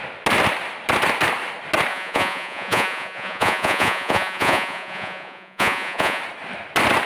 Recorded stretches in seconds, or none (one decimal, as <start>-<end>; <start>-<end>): 0.0-1.9; 6.2-7.1